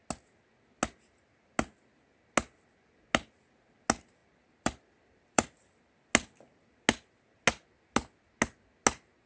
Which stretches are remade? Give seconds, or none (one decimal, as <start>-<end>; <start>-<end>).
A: 4.2-6.1